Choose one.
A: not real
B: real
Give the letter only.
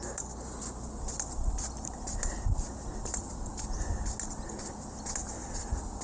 B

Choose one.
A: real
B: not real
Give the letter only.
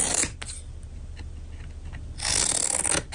A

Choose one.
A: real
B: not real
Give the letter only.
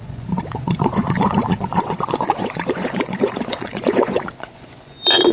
B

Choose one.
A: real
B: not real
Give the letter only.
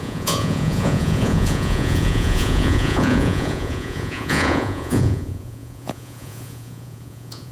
B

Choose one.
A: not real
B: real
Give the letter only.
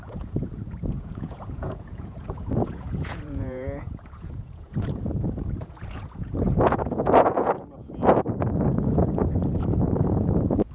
A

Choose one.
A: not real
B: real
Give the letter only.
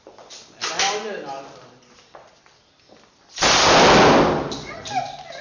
B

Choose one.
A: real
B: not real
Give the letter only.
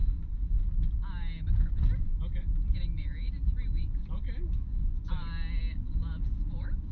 A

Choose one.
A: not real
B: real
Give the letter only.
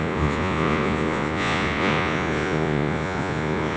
A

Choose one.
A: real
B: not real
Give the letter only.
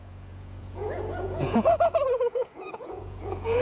B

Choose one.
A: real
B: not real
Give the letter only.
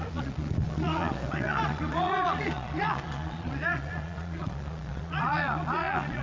B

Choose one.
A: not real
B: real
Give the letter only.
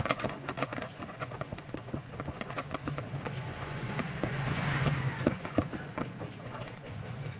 A